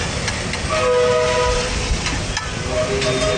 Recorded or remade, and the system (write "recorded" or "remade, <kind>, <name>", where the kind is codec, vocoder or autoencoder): recorded